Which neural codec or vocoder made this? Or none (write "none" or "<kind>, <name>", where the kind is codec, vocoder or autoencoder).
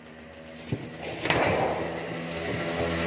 none